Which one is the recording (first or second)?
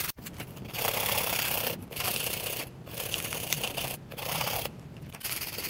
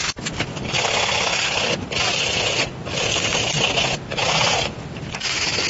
second